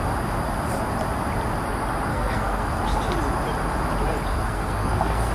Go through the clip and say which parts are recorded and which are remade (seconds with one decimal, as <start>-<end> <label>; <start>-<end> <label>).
0.0-2.1 recorded; 2.1-2.7 remade; 2.7-4.4 recorded; 4.4-5.3 remade